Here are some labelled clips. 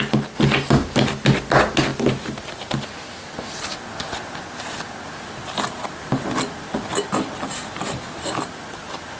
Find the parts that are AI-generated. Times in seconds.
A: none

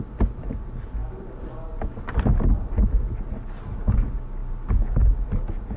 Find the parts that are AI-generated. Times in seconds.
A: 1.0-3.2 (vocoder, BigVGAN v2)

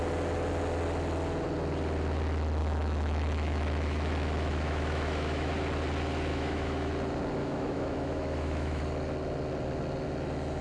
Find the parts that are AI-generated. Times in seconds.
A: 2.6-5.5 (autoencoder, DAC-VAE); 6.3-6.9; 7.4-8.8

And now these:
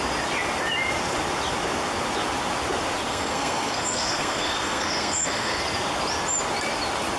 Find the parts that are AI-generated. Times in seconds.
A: 3.1-5.6 (codec, SNAC)

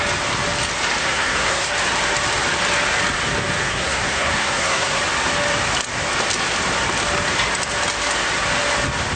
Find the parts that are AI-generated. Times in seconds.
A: 1.0-1.7 (codec, SNAC); 3.6-5.0

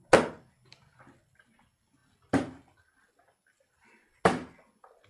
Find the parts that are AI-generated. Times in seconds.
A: none